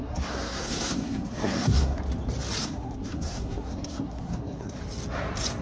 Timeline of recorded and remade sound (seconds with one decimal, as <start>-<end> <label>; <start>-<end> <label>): 0.0-2.0 remade; 2.0-2.6 recorded; 2.6-4.8 remade; 4.8-5.6 recorded